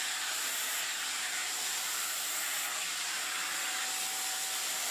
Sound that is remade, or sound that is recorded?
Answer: remade